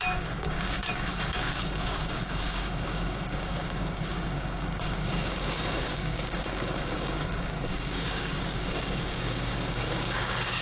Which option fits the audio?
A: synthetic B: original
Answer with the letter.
A